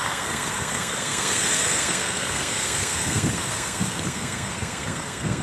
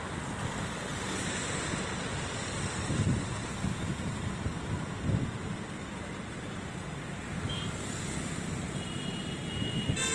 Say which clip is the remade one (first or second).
first